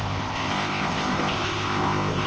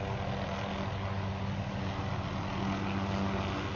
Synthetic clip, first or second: first